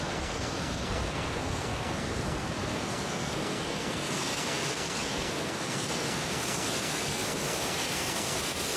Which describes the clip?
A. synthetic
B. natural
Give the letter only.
A